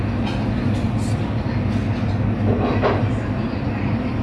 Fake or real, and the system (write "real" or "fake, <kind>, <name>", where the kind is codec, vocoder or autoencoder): real